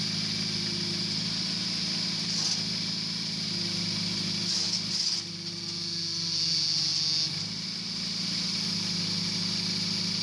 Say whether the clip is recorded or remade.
recorded